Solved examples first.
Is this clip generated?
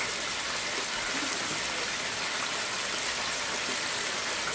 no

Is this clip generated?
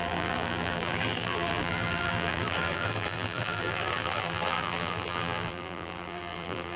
yes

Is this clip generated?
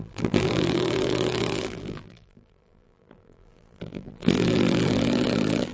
yes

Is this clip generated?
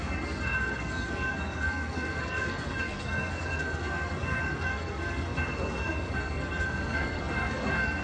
yes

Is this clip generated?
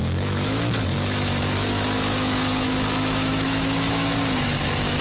yes